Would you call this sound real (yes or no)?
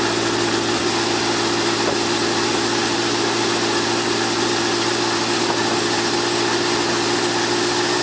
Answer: yes